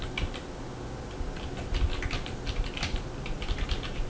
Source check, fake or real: real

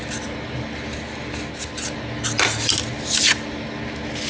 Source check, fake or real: real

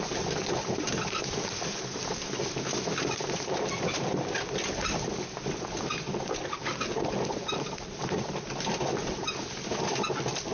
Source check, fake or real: real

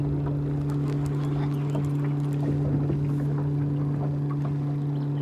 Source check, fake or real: real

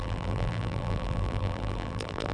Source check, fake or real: fake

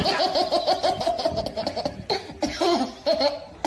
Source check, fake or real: real